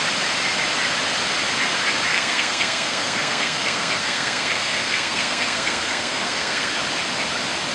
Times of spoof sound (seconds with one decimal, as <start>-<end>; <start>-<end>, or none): 2.1-6.7